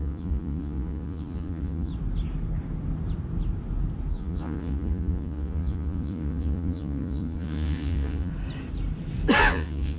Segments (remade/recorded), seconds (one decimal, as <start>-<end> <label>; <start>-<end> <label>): 0.0-1.9 remade; 1.9-4.1 recorded; 4.1-8.3 remade; 8.3-9.4 recorded; 9.4-10.0 remade